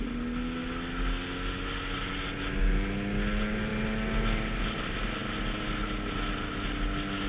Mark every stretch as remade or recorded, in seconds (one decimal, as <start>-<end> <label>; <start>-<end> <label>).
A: 0.0-7.3 recorded

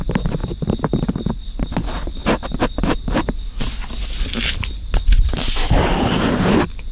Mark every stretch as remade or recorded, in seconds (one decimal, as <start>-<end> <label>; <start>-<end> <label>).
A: 0.0-0.4 remade; 0.4-1.7 recorded; 1.7-6.9 remade

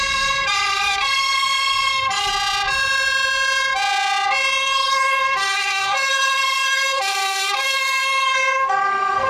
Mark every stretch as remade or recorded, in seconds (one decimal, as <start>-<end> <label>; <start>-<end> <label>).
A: 0.0-2.3 remade; 2.3-4.6 recorded; 4.6-9.3 remade